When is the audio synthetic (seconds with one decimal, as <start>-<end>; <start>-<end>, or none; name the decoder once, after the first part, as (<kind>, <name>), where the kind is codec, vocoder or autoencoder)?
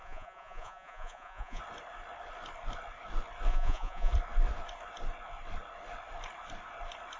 0.0-1.6 (vocoder, Vocos); 3.5-4.1